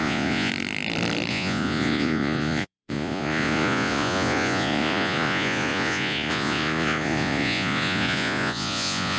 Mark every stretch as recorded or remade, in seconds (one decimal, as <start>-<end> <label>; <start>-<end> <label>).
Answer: 0.0-0.5 remade; 0.5-1.3 recorded; 1.3-9.2 remade